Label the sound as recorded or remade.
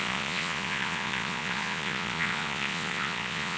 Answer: remade